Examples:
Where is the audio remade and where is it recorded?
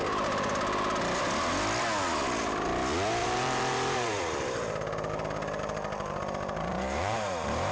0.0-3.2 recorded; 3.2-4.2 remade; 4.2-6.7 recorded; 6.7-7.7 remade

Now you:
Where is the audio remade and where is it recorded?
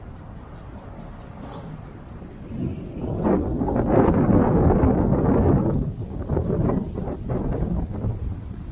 0.0-1.1 remade; 1.1-6.3 recorded; 6.3-8.7 remade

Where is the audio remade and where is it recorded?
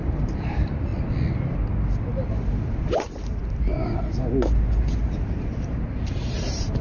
0.0-0.9 remade; 0.9-2.3 recorded; 2.3-3.4 remade; 3.4-5.2 recorded; 5.2-6.8 remade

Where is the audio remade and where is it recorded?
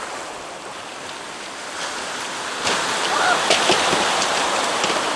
0.0-5.2 recorded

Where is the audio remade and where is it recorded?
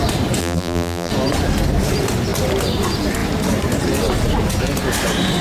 0.0-0.4 recorded; 0.4-1.1 remade; 1.1-5.4 recorded